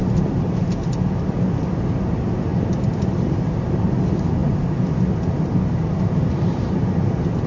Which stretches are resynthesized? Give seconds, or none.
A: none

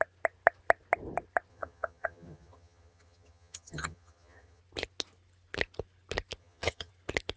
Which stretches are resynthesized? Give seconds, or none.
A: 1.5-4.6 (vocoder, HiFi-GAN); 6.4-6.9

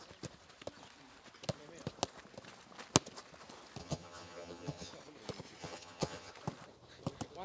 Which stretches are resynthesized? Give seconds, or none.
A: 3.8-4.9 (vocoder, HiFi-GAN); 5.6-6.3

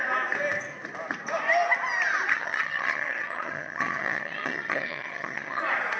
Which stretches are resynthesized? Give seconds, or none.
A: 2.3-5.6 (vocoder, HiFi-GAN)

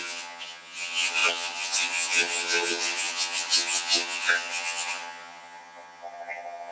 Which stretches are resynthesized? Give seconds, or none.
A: 0.0-6.7 (vocoder, HiFi-GAN)

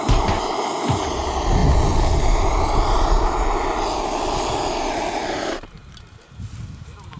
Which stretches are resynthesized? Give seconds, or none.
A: none